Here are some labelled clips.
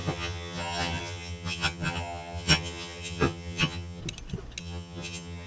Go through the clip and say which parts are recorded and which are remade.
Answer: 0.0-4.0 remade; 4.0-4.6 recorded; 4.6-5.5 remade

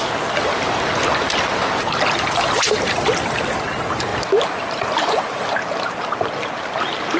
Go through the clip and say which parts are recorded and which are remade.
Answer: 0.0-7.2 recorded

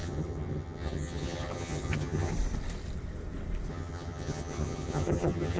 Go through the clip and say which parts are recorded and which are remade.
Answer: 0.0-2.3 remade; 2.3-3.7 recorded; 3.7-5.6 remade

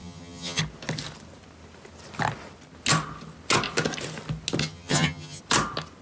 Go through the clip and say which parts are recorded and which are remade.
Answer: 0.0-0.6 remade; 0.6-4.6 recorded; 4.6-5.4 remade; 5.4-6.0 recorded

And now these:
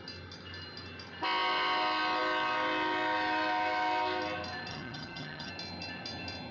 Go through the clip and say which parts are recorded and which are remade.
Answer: 0.0-4.7 recorded; 4.7-5.5 remade; 5.5-6.5 recorded

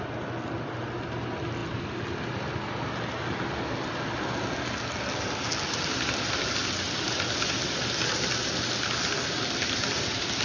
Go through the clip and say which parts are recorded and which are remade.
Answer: 0.0-10.4 recorded